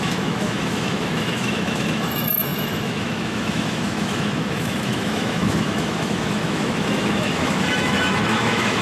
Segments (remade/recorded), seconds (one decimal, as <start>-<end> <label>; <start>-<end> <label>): 0.0-8.8 remade